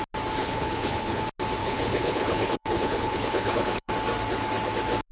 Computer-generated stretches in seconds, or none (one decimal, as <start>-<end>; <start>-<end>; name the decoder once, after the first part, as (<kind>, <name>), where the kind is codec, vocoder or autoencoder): 0.4-1.2 (codec, HILCodec); 1.6-3.9